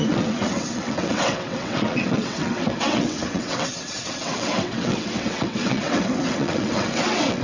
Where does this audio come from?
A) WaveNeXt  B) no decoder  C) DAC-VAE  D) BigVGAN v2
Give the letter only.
A